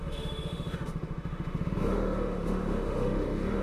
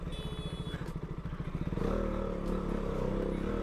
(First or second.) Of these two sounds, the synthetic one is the first